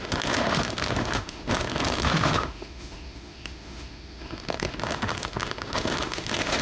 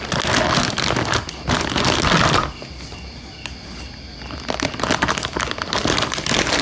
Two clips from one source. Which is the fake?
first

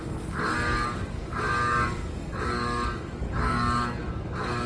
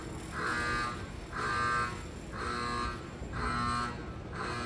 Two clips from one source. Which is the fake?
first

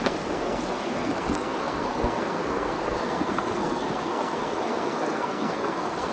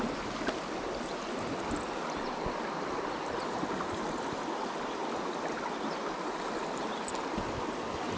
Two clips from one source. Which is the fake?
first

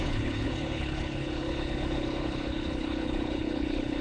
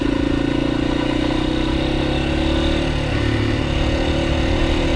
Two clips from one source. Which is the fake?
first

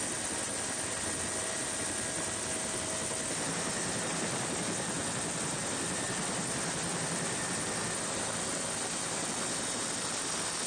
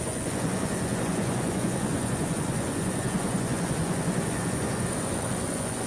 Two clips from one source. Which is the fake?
second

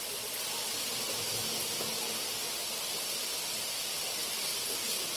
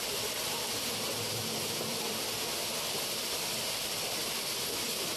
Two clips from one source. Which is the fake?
second